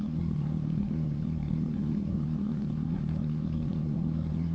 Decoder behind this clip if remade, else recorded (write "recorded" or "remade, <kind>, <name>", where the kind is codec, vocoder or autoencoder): remade, codec, SNAC